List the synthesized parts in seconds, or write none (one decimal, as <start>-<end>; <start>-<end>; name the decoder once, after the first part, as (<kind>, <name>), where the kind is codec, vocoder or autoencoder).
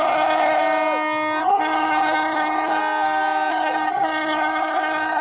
0.0-0.6 (vocoder, HiFi-GAN); 1.4-2.8; 3.5-5.2